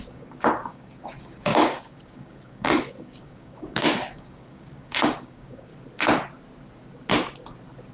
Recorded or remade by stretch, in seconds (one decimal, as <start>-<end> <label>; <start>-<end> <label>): 0.0-5.7 remade; 5.7-7.9 recorded

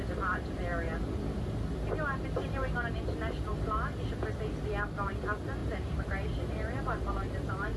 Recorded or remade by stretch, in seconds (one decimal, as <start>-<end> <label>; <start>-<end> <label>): 0.0-5.6 recorded; 5.6-7.8 remade

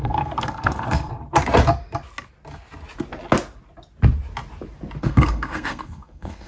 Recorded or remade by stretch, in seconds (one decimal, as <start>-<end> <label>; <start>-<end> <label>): 0.0-1.1 remade; 1.1-5.0 recorded; 5.0-6.5 remade

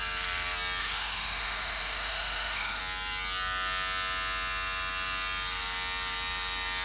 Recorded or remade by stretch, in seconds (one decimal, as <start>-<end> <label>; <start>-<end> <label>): 0.0-0.8 recorded; 0.8-2.8 remade; 2.8-6.8 recorded